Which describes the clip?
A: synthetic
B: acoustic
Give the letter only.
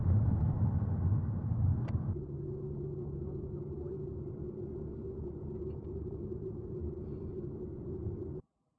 B